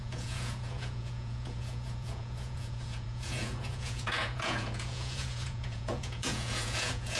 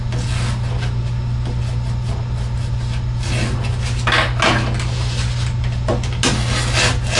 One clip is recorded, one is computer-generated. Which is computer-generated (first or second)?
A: first